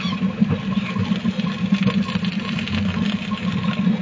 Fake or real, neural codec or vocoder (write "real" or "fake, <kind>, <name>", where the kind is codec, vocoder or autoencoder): real